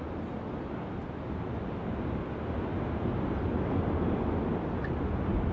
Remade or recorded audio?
recorded